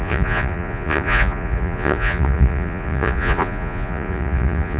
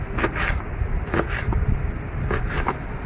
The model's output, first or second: first